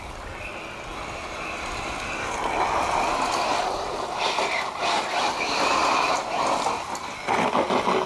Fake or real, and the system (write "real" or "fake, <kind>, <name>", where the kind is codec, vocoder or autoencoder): real